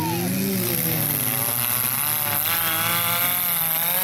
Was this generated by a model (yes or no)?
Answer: no